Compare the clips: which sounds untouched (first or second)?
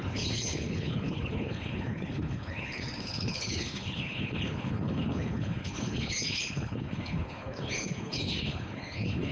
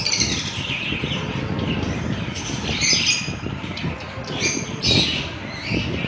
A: second